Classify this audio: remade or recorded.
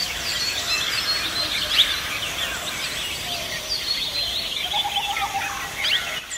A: recorded